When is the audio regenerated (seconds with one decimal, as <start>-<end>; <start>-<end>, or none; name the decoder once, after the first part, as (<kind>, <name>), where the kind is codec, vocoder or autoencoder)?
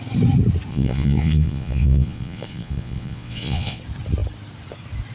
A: 0.7-3.8 (vocoder, Vocos)